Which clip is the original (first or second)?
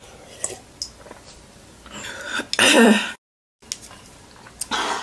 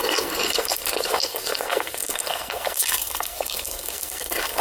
first